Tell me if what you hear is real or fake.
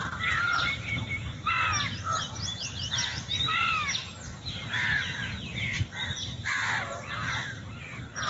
fake